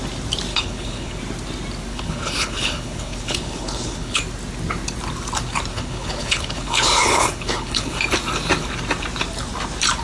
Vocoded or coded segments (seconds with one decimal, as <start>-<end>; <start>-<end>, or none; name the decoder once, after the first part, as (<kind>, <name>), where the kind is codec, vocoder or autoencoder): 0.5-1.2 (codec, HILCodec); 1.9-4.2; 5.7-8.0

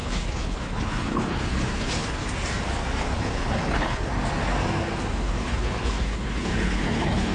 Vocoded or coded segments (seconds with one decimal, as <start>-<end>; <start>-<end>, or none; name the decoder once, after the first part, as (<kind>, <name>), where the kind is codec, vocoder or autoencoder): 0.0-2.2 (codec, HILCodec); 3.0-4.1; 5.1-7.3

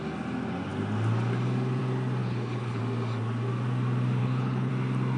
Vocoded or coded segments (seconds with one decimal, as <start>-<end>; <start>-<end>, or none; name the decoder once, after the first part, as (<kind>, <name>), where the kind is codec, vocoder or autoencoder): 2.2-2.8 (codec, HILCodec); 4.2-4.7

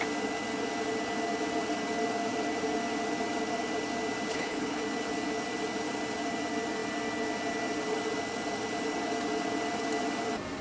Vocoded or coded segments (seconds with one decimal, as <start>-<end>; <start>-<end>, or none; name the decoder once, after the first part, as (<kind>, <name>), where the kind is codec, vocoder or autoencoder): 4.3-4.8 (codec, HILCodec)